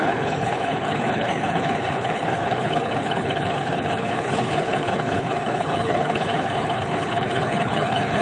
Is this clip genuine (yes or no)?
no